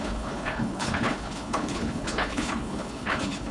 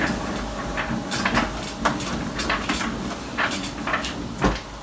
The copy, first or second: first